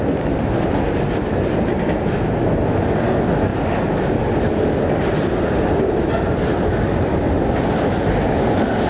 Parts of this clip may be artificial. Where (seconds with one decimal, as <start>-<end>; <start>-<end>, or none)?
none